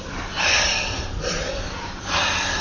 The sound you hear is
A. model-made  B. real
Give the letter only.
B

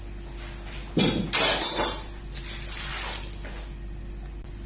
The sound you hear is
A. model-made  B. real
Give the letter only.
B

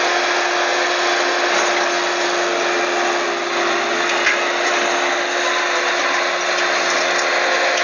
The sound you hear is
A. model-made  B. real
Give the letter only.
B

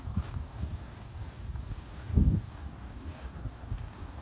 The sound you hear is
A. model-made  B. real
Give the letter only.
A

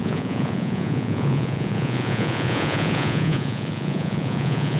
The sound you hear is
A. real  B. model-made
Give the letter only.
B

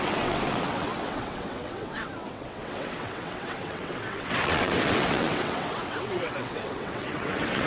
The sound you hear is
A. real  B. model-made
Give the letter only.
B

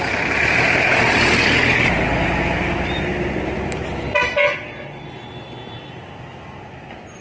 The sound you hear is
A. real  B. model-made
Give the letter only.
A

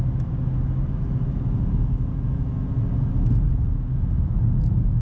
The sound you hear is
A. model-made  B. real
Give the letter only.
B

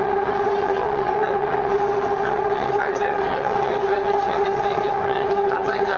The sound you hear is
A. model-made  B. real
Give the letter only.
A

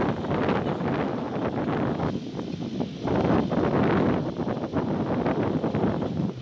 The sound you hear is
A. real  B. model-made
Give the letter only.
A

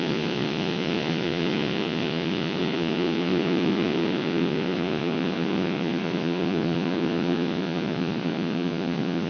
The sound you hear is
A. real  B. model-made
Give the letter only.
B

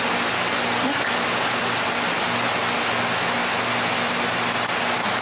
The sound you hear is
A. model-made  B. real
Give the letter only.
B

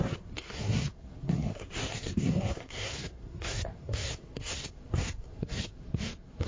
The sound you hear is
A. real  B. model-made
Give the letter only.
B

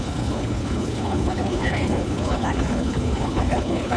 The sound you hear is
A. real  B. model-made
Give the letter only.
B